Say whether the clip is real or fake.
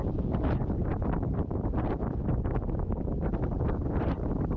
fake